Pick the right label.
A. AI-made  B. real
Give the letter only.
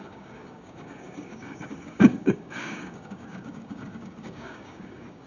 A